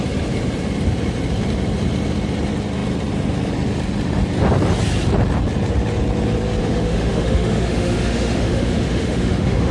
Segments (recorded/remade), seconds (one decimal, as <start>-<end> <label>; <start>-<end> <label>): 0.0-6.6 recorded; 6.6-9.7 remade